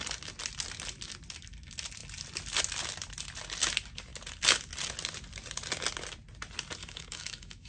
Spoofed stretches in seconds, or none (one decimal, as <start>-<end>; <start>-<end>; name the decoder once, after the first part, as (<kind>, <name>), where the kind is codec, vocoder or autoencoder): 6.8-7.7 (autoencoder, DAC-VAE)